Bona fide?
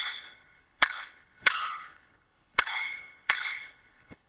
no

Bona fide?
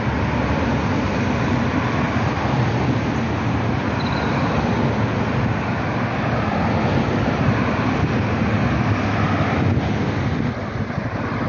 yes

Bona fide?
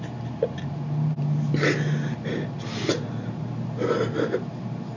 yes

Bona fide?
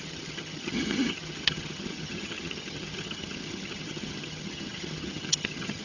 no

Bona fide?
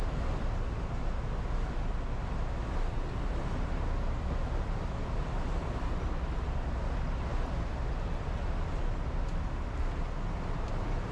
yes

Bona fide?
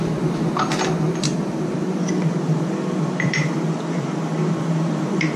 no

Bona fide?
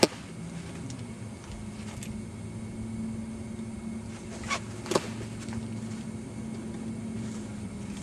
yes